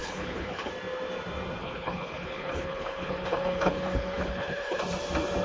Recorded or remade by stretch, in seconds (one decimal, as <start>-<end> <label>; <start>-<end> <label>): 0.0-0.7 remade; 0.7-1.6 recorded; 1.6-4.8 remade; 4.8-5.4 recorded